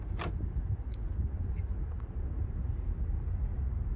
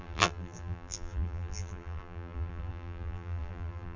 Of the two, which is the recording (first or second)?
first